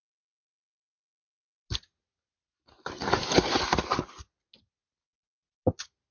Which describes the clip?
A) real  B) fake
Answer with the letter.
A